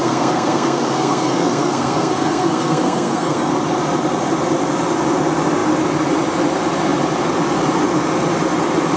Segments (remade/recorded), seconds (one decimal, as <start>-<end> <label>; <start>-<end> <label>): 0.0-3.5 remade; 3.5-9.0 recorded